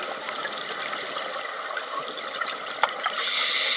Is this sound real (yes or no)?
yes